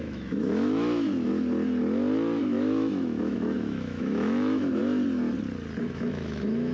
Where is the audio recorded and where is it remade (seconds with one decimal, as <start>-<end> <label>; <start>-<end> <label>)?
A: 0.0-1.3 remade; 1.3-2.4 recorded; 2.4-4.8 remade; 4.8-5.8 recorded; 5.8-6.7 remade